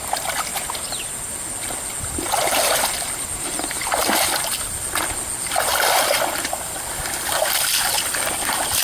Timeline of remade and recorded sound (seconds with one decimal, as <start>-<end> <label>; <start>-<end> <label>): 0.0-0.5 recorded; 0.5-1.1 remade; 1.1-8.8 recorded